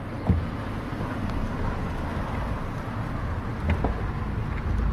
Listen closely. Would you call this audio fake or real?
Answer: real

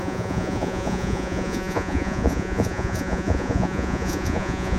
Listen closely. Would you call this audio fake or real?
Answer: fake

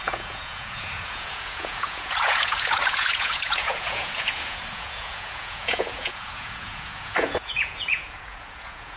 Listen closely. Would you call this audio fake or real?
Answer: fake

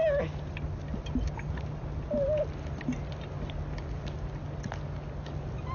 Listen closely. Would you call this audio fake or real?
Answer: real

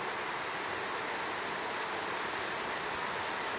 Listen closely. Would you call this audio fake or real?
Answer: real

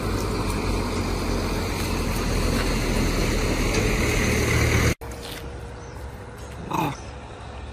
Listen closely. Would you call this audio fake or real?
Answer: real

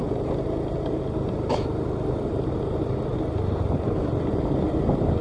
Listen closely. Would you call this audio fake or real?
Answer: real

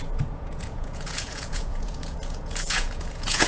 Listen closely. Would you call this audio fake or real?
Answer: fake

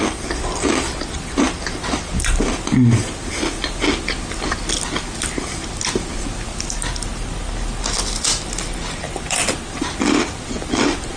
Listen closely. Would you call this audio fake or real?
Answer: real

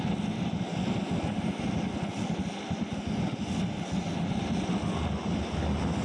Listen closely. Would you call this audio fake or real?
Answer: real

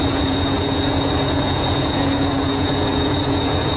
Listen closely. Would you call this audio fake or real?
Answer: fake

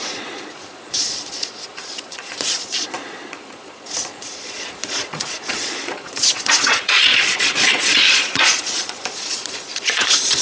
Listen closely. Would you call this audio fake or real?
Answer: fake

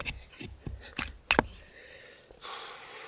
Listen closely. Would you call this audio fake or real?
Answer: real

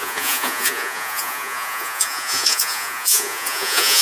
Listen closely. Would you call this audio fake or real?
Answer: fake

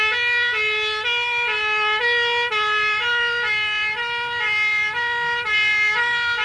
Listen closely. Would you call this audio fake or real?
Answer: real